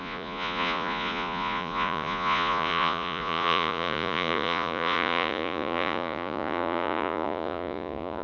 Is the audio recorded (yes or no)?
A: no